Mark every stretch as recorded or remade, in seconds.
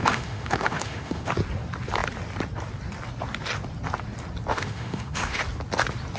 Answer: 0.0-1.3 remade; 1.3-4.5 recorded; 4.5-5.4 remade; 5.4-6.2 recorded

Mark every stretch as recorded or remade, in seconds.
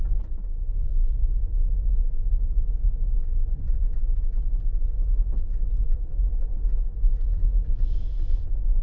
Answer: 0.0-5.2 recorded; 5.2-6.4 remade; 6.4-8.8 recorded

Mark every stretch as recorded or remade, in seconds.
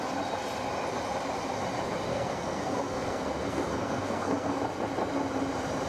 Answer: 0.0-2.1 recorded; 2.1-4.6 remade; 4.6-5.9 recorded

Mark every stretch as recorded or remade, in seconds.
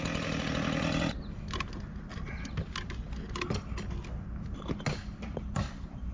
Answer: 0.0-6.1 recorded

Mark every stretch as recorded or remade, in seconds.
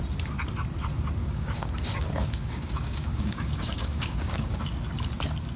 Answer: 0.0-1.2 recorded; 1.2-4.6 remade; 4.6-5.6 recorded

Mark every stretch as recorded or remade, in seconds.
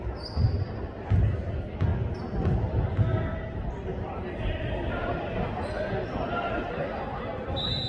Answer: 0.0-7.9 recorded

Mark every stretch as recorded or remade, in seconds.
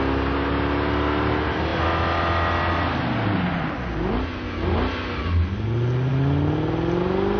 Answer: 0.0-7.4 recorded